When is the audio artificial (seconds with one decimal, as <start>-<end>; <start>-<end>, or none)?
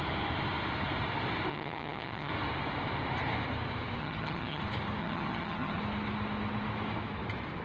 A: 1.5-2.3; 4.0-4.6; 5.0-5.8